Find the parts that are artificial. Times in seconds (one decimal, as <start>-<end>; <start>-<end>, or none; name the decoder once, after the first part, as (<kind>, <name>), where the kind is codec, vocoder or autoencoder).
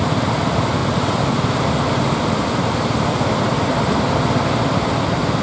none